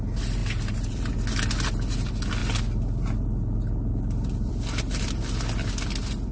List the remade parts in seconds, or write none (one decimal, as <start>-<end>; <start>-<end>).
0.4-1.1